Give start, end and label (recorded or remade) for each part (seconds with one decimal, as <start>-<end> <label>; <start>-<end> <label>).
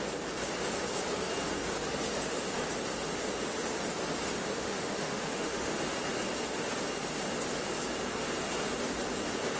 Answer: 0.0-4.4 recorded; 4.4-5.8 remade; 5.8-9.6 recorded